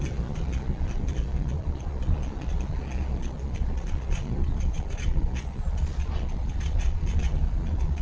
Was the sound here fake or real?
fake